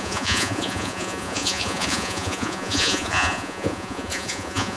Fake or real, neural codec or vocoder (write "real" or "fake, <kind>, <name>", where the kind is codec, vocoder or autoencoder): fake, vocoder, Vocos